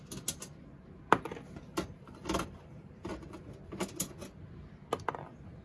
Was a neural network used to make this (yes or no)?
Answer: no